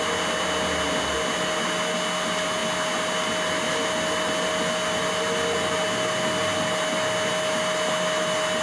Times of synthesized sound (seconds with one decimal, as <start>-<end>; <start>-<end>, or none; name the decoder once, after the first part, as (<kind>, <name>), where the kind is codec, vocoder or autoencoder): none